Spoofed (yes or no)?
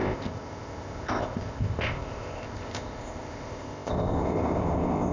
yes